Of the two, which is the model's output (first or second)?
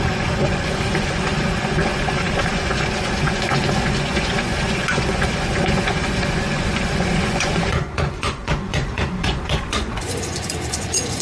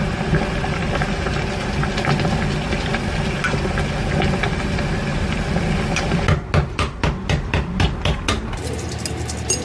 first